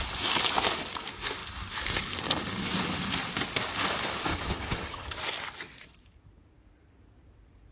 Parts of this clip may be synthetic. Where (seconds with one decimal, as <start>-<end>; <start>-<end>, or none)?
4.3-5.2